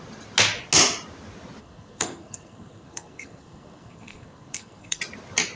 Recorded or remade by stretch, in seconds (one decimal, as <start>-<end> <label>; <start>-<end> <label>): 0.0-1.6 recorded; 1.6-5.0 remade; 5.0-5.6 recorded